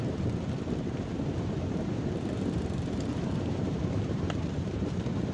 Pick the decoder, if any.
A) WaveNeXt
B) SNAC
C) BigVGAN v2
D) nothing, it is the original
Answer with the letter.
C